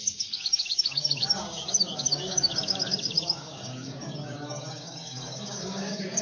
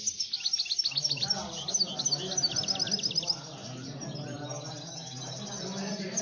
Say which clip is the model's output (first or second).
first